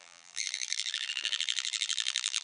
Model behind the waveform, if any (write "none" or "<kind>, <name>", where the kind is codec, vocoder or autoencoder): vocoder, BigVGAN v2